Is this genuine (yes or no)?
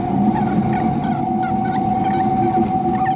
yes